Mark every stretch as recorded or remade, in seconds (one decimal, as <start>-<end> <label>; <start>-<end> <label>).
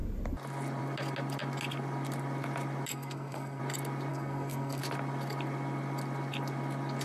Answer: 0.0-2.9 recorded; 2.9-3.6 remade; 3.6-4.1 recorded; 4.1-4.8 remade; 4.8-7.0 recorded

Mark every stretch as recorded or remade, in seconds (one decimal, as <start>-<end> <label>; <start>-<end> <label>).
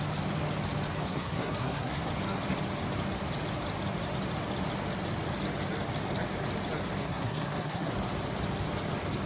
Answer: 0.0-1.0 recorded; 1.0-2.1 remade; 2.1-7.0 recorded; 7.0-7.9 remade; 7.9-9.3 recorded